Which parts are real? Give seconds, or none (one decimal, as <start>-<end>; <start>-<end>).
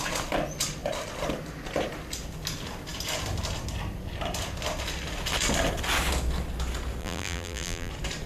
0.0-7.0; 7.9-8.3